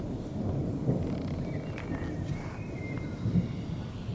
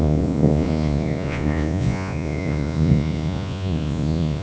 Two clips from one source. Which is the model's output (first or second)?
second